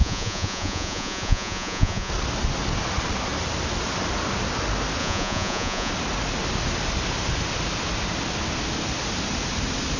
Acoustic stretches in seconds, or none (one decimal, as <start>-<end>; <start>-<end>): 2.1-5.0; 5.9-10.0

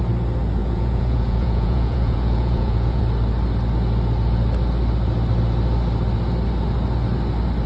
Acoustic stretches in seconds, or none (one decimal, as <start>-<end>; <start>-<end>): 0.0-0.6; 3.0-7.7

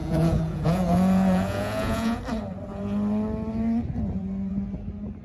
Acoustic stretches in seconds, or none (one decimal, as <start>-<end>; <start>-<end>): 2.2-5.2

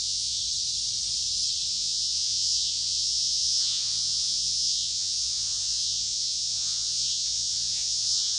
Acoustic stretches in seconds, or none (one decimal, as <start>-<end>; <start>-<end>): 0.4-1.7

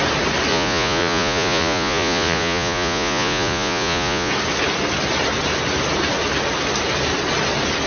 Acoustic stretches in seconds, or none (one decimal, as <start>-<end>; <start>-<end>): 0.0-0.5; 4.3-7.9

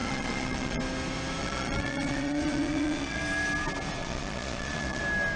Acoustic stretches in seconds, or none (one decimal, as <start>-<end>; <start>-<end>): 0.8-1.4; 3.2-4.0; 5.0-5.4